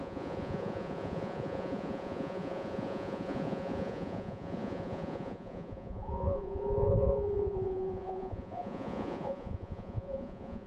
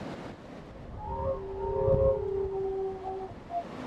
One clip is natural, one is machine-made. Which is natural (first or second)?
second